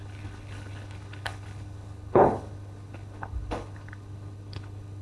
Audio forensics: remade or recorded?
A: remade